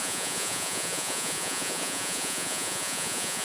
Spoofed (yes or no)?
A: yes